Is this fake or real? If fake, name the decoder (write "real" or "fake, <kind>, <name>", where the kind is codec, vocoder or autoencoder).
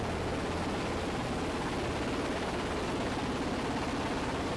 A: real